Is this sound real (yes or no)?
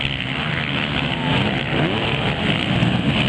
yes